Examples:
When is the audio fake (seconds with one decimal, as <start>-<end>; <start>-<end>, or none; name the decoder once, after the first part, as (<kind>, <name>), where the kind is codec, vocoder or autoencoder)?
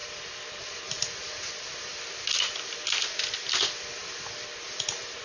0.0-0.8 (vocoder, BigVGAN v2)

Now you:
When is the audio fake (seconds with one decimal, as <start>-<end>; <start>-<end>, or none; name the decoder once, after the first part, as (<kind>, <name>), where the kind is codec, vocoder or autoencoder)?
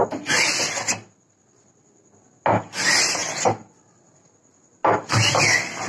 none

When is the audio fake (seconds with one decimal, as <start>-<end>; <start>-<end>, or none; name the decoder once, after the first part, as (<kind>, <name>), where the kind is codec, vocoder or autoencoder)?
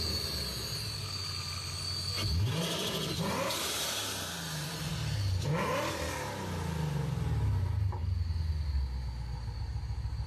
none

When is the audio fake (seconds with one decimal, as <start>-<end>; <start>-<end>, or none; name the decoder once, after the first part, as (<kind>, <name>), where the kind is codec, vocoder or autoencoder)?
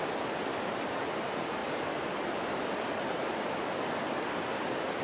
none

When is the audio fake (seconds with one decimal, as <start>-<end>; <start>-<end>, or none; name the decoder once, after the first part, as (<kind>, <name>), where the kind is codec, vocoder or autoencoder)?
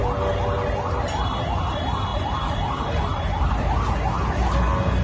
none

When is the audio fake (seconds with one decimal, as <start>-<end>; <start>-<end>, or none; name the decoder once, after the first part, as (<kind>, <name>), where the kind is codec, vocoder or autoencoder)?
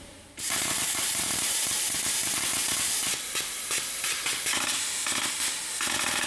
0.0-2.5 (vocoder, BigVGAN v2)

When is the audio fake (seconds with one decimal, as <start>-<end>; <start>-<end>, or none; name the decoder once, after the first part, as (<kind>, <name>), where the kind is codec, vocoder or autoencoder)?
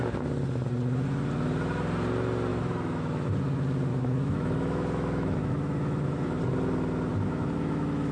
2.5-3.3 (autoencoder, DAC-VAE); 3.9-6.4; 7.1-8.1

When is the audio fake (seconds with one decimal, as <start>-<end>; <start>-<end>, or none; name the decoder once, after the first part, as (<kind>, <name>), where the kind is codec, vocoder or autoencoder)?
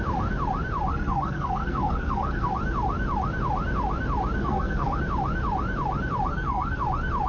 0.9-2.5 (codec, SNAC); 4.4-5.0; 6.3-6.8